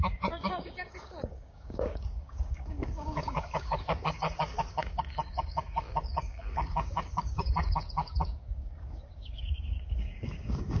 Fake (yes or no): yes